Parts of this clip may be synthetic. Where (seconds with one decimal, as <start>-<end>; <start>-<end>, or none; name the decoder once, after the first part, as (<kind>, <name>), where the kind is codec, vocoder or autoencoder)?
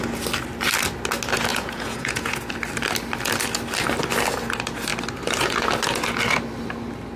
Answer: 1.5-2.5 (vocoder, Vocos)